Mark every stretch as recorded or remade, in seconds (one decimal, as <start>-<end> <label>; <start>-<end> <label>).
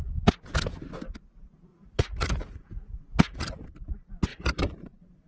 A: 0.0-1.7 recorded; 1.7-3.5 remade; 3.5-4.3 recorded; 4.3-5.3 remade